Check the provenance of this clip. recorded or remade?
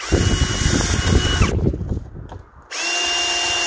recorded